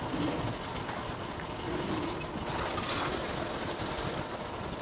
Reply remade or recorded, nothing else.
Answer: recorded